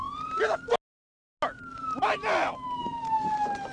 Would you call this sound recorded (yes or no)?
yes